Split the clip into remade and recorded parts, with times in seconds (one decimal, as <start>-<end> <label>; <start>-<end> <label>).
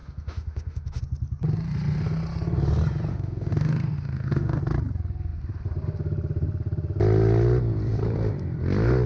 0.0-1.0 remade; 1.0-3.1 recorded; 3.1-4.6 remade; 4.6-9.1 recorded